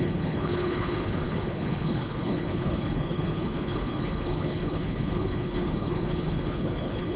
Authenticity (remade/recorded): remade